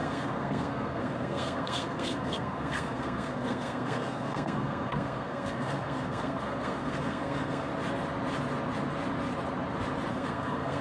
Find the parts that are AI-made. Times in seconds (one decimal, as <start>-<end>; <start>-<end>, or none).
0.0-7.7; 10.1-10.8